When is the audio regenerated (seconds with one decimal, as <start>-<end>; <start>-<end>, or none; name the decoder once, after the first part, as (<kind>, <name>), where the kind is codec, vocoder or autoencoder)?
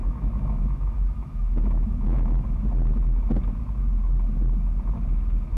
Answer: 0.0-2.5 (autoencoder, DAC-VAE)